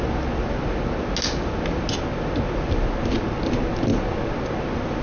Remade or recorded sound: recorded